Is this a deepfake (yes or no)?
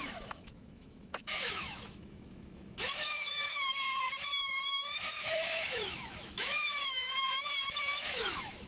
yes